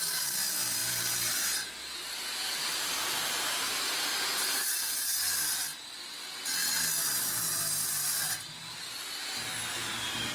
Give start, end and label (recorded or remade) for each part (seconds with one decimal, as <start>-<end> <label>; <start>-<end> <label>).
0.0-0.8 recorded; 0.8-5.2 remade; 5.2-10.3 recorded